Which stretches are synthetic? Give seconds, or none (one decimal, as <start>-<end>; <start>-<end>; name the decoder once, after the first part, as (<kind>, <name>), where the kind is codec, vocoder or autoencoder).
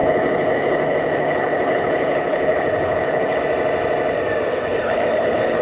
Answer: 0.0-3.4 (codec, HILCodec); 4.5-5.6